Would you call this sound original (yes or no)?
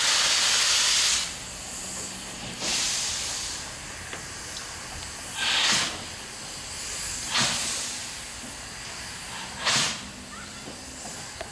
yes